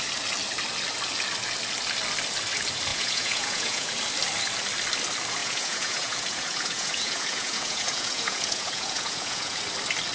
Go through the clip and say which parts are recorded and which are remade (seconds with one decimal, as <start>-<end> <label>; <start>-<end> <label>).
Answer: 0.0-2.9 recorded; 2.9-3.9 remade; 3.9-5.4 recorded; 5.4-9.6 remade; 9.6-10.1 recorded